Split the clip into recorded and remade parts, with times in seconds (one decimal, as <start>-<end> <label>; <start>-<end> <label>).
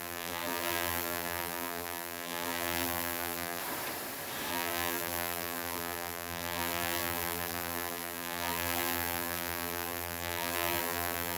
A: 0.0-3.6 remade; 3.6-4.5 recorded; 4.5-11.4 remade